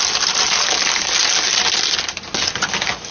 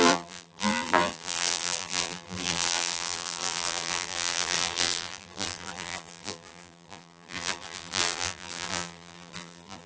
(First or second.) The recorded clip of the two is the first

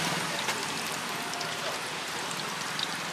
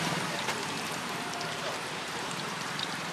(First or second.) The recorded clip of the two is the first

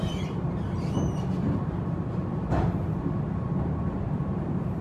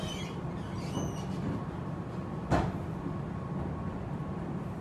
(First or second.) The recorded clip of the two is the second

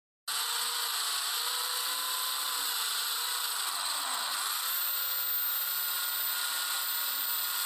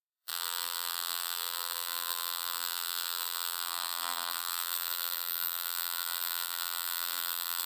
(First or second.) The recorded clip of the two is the first